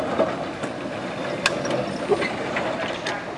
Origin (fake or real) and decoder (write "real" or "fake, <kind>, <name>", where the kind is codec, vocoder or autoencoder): real